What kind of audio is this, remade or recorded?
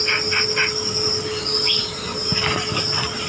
recorded